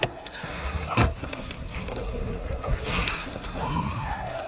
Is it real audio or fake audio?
fake